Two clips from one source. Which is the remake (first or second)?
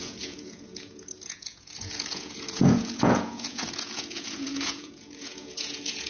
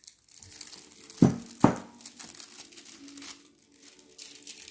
first